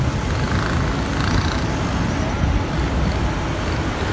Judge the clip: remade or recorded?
recorded